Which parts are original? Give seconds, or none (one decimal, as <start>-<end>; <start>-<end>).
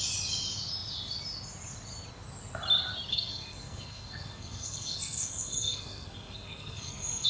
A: 0.0-3.1